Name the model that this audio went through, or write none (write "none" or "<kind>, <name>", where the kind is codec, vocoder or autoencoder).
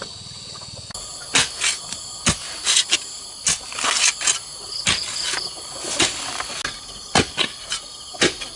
none